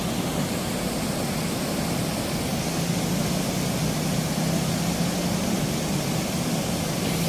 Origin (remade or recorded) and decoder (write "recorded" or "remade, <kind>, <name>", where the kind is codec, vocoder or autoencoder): recorded